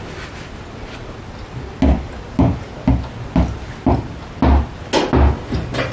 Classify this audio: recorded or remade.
recorded